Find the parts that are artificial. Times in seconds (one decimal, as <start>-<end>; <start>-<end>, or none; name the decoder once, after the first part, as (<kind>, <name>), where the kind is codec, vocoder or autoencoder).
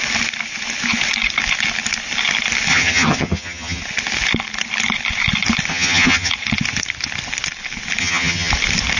2.7-3.8 (vocoder, HiFi-GAN); 5.7-6.3; 8.0-8.5